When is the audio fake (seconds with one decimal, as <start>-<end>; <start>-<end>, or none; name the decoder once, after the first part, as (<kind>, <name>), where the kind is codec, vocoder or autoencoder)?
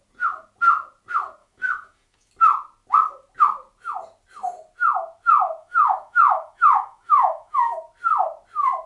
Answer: 1.4-2.3 (autoencoder, DAC-VAE); 5.6-7.8